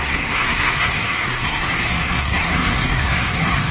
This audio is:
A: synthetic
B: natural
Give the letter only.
A